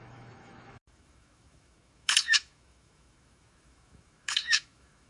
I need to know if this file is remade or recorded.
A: remade